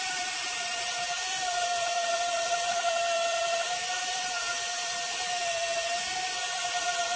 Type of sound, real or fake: fake